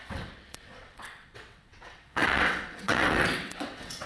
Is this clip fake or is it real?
fake